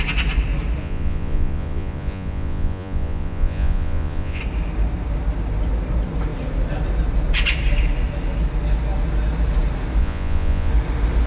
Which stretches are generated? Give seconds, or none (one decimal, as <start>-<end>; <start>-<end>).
0.8-4.4; 10.0-10.7